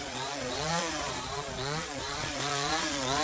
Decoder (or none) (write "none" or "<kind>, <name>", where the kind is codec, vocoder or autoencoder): vocoder, Vocos